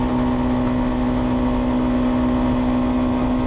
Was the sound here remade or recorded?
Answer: recorded